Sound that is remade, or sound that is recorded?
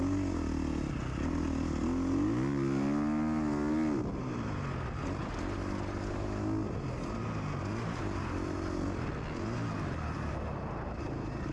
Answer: recorded